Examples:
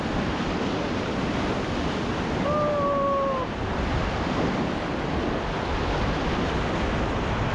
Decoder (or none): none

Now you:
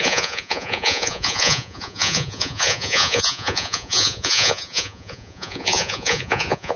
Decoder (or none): vocoder, Vocos